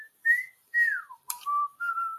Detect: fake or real fake